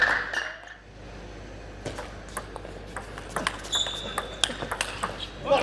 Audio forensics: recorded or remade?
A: recorded